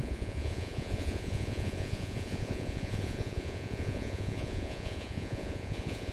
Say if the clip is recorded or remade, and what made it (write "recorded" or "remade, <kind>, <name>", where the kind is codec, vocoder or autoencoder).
remade, vocoder, Vocos